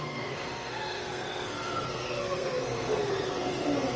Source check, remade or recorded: remade